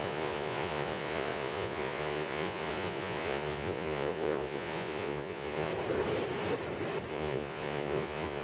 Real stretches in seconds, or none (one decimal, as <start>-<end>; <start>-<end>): 5.7-7.1